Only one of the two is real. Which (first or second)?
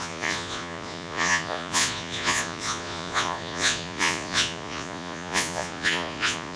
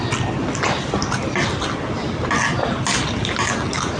second